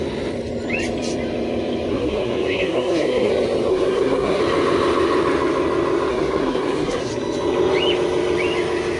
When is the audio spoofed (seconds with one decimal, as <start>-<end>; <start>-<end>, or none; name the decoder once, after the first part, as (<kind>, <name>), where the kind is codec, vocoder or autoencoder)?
1.9-3.3 (codec, SNAC); 3.7-4.4; 6.1-7.1